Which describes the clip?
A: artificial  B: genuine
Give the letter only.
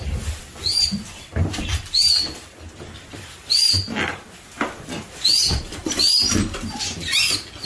B